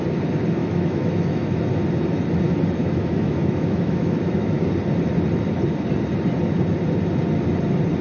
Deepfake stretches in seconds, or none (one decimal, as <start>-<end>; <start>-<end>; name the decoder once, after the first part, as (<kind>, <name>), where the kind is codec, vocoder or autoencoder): 0.6-1.6 (autoencoder, DAC-VAE); 2.8-4.6